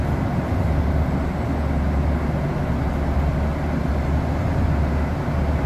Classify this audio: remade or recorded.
recorded